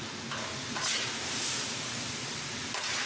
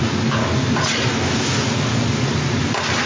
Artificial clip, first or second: first